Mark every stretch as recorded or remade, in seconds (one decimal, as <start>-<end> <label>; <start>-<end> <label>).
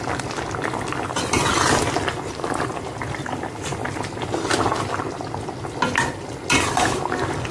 0.0-7.5 recorded